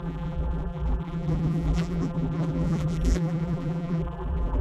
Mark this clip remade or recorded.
remade